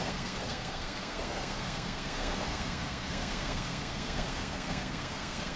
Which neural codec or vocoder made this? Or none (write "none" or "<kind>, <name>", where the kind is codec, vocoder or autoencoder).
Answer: codec, SNAC